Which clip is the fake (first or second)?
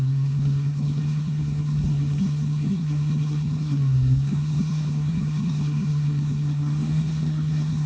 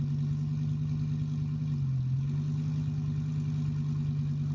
first